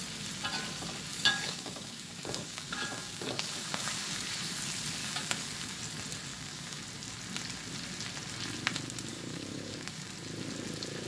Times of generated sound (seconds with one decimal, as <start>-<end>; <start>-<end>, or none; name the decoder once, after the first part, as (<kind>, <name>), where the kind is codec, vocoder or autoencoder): 1.1-4.3 (codec, DAC); 5.0-5.8; 6.3-6.8; 9.1-10.1